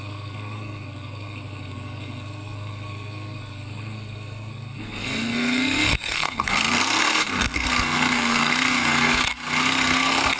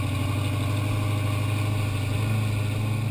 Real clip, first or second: second